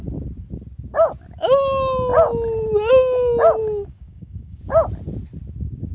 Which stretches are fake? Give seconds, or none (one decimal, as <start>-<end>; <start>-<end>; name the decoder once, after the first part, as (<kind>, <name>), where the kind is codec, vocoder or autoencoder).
3.6-4.6 (codec, DAC)